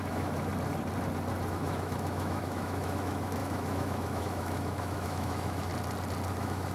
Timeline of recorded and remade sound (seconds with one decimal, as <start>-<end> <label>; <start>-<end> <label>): 0.0-0.5 remade; 0.5-1.5 recorded; 1.5-5.7 remade; 5.7-6.3 recorded; 6.3-6.7 remade